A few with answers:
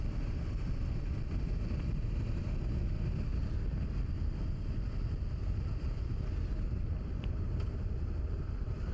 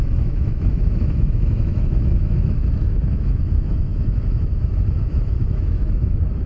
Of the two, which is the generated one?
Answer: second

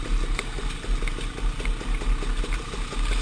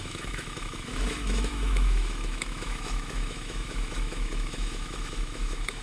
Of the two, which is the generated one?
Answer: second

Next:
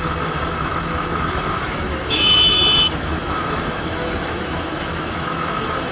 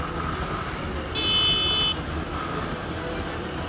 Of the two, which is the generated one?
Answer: first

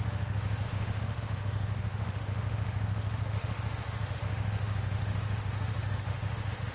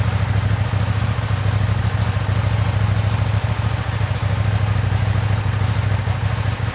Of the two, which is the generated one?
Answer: first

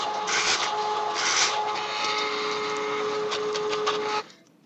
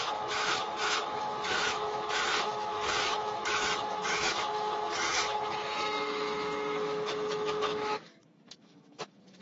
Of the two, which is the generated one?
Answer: second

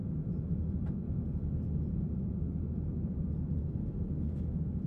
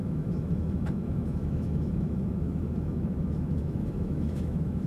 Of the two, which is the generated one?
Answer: second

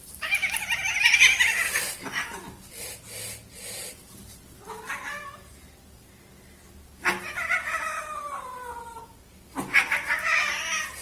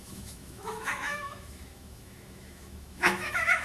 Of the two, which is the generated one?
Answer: second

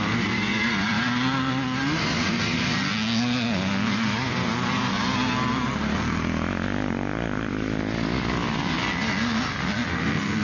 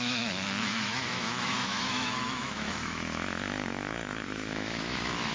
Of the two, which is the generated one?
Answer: second